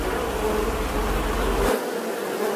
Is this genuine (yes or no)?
yes